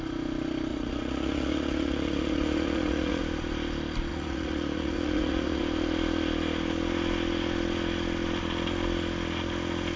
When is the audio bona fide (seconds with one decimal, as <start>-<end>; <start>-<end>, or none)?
0.0-0.7; 3.2-4.1; 5.6-10.0